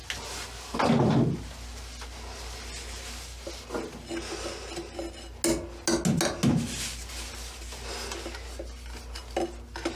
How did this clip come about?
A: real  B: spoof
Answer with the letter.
A